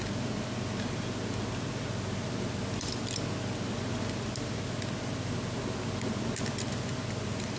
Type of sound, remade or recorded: recorded